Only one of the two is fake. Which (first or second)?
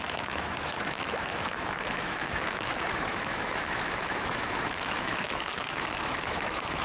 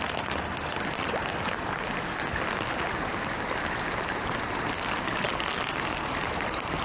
first